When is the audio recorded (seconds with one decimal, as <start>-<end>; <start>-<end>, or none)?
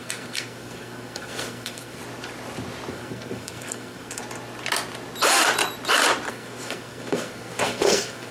2.0-2.9; 4.2-6.3